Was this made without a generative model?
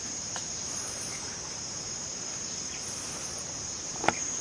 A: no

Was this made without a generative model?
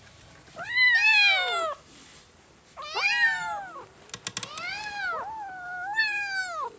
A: yes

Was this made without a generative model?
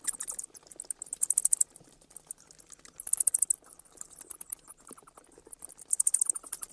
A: no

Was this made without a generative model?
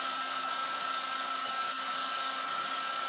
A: no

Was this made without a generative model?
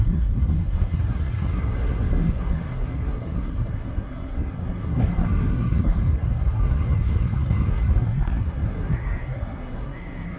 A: no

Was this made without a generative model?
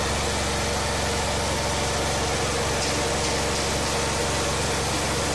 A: yes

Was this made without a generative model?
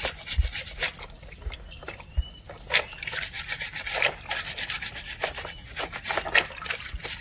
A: yes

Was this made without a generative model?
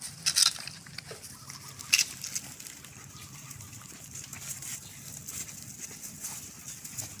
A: yes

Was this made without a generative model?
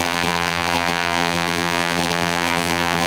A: no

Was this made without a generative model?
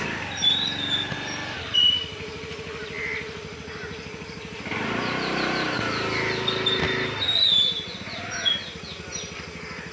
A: yes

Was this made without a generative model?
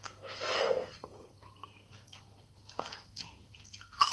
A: no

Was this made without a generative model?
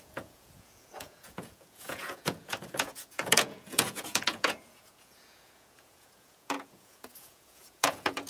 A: no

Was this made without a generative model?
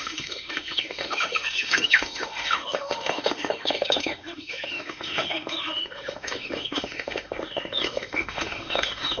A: no